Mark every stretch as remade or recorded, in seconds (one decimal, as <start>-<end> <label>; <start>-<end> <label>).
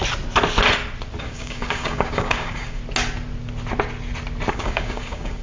0.0-1.2 recorded; 1.2-2.8 remade; 2.8-4.5 recorded; 4.5-5.4 remade